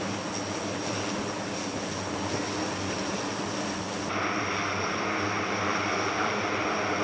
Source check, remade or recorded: recorded